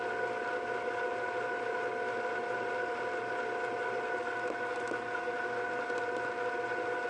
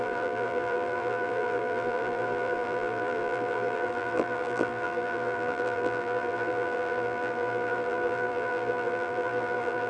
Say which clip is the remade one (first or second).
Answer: second